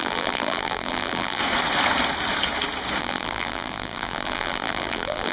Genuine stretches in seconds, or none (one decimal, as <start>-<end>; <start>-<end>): 1.4-3.0